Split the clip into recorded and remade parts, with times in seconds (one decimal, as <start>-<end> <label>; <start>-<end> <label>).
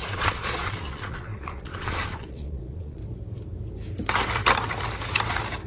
0.0-3.0 remade; 3.0-5.7 recorded